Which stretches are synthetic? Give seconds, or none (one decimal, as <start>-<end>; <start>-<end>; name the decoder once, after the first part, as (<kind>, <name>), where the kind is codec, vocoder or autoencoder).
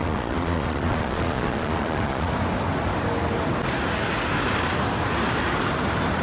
0.0-2.3 (vocoder, Vocos)